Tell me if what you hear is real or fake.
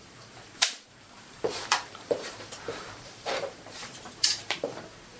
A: fake